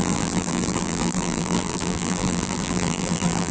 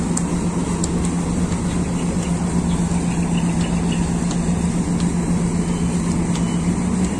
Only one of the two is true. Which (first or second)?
second